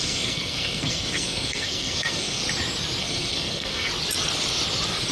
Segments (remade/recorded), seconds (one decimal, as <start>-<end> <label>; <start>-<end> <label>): 0.0-2.4 remade; 2.4-3.0 recorded; 3.0-3.9 remade; 3.9-5.1 recorded